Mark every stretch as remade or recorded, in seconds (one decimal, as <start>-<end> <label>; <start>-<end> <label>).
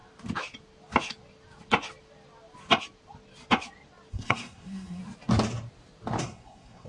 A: 0.0-4.1 recorded; 4.1-5.0 remade; 5.0-6.2 recorded; 6.2-6.9 remade